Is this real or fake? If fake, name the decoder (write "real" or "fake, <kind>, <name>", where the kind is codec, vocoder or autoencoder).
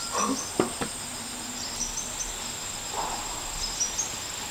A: real